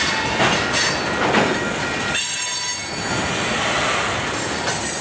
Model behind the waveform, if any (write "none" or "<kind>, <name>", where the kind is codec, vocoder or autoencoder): none